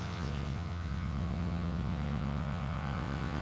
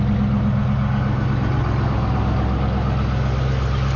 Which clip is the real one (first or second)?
second